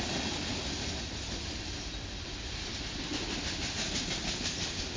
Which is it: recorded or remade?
recorded